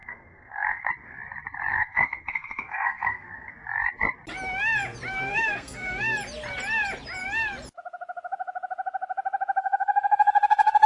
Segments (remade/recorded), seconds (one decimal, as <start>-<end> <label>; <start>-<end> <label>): 0.0-0.9 remade; 0.9-1.7 recorded; 1.7-3.5 remade; 3.5-5.3 recorded; 5.3-6.0 remade; 6.0-9.6 recorded; 9.6-10.9 remade